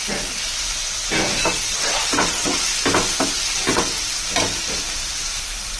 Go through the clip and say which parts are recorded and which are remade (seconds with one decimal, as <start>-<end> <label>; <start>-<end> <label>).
0.0-1.5 recorded; 1.5-2.6 remade; 2.6-3.6 recorded; 3.6-4.1 remade; 4.1-5.8 recorded